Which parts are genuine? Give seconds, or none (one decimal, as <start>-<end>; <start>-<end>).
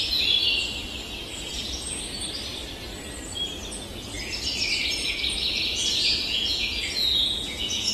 0.0-1.3; 1.9-6.0